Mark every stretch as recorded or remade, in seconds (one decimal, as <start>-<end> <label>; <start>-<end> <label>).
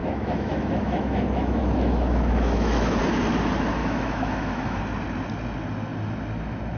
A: 0.0-3.0 remade; 3.0-3.8 recorded; 3.8-4.8 remade; 4.8-6.8 recorded